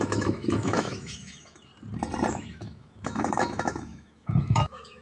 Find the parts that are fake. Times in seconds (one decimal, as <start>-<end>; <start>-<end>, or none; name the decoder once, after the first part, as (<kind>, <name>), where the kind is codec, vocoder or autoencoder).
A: 0.0-1.7 (autoencoder, DAC-VAE); 2.3-5.0